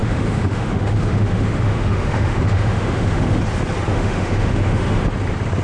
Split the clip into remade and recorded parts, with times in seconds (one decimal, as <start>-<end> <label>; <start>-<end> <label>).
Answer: 0.0-3.4 remade; 3.4-3.9 recorded; 3.9-5.0 remade; 5.0-5.6 recorded